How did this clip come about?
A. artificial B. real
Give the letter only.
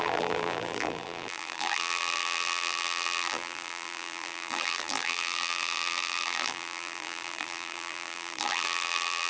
A